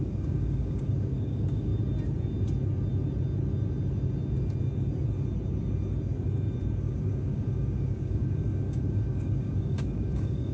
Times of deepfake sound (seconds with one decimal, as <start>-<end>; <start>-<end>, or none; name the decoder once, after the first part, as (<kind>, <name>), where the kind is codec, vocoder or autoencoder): 0.0-1.7 (codec, DAC); 6.8-10.5